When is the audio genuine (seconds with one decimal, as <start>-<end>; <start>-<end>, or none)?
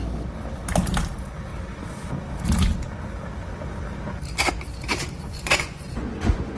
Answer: 0.0-5.3